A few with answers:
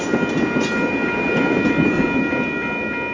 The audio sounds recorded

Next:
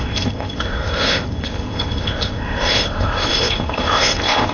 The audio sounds remade